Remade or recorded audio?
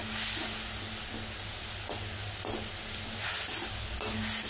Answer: recorded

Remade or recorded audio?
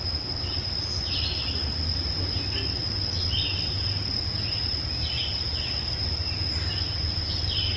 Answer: recorded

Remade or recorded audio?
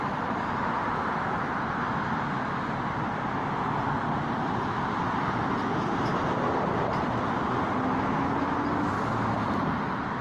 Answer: recorded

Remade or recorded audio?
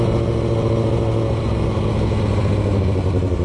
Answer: recorded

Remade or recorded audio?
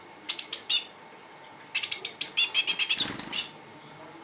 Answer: recorded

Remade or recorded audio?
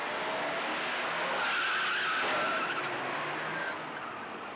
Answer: recorded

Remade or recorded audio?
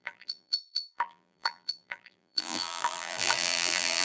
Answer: remade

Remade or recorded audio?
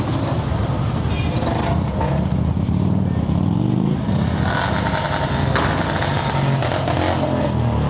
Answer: recorded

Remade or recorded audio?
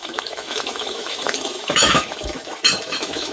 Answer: remade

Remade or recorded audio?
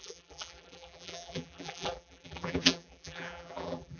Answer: remade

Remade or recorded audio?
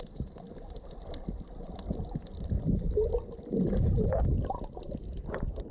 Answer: recorded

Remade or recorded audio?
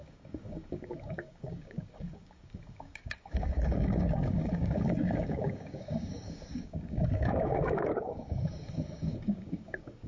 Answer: remade